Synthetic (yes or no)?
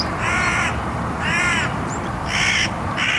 yes